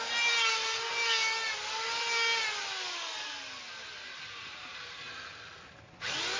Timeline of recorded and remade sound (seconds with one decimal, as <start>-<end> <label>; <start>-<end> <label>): 0.0-6.4 recorded